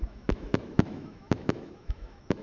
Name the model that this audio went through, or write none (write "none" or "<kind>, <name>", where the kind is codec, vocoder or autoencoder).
autoencoder, DAC-VAE